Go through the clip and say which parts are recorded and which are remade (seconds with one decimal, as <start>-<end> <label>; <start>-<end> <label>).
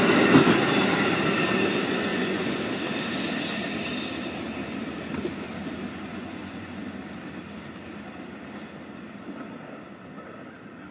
0.0-2.1 recorded; 2.1-2.6 remade; 2.6-6.1 recorded; 6.1-6.8 remade; 6.8-10.9 recorded